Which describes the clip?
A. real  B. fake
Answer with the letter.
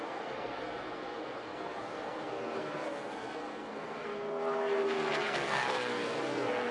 B